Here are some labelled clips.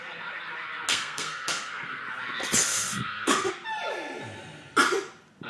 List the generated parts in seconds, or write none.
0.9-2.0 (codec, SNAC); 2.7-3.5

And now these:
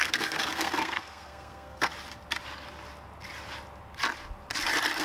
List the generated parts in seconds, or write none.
0.0-1.9 (codec, SNAC)

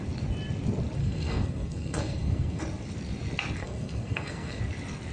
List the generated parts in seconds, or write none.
1.0-2.6 (codec, SNAC); 3.6-4.6

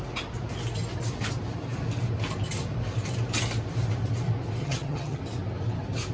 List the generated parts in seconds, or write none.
4.6-5.2 (vocoder, HiFi-GAN)

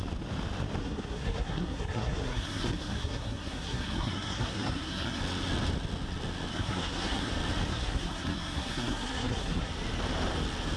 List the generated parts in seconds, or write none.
0.8-5.2 (codec, SNAC); 6.5-7.3; 7.7-9.7